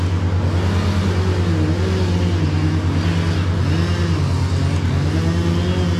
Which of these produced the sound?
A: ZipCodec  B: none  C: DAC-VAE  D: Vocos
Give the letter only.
B